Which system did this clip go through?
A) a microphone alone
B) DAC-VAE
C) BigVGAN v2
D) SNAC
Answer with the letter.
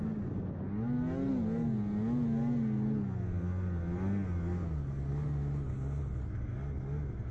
A